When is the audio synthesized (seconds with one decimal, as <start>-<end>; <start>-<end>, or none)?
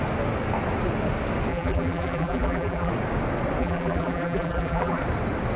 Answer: 1.5-2.9; 3.6-5.0